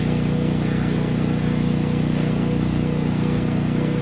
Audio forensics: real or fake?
fake